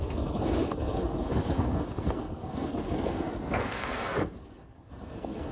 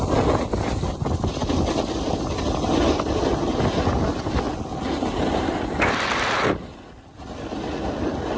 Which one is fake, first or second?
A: first